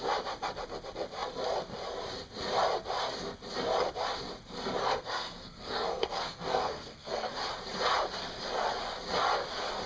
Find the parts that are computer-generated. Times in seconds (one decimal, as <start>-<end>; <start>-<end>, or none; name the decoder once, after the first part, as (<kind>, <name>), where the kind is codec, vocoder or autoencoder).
4.8-7.3 (codec, SNAC)